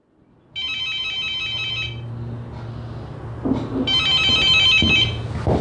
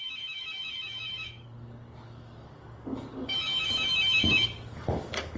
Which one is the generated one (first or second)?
second